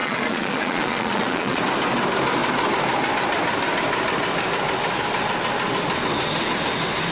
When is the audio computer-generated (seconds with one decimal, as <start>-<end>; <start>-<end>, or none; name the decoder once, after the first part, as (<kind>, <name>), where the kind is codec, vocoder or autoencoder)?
0.0-1.6 (vocoder, Vocos)